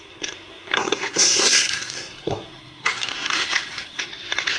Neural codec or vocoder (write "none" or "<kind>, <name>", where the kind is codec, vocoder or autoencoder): codec, SNAC